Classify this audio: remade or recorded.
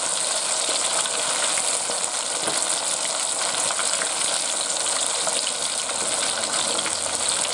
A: recorded